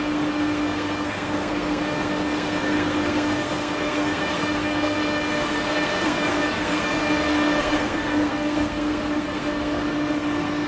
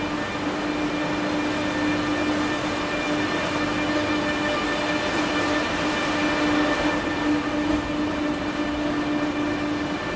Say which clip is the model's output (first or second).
first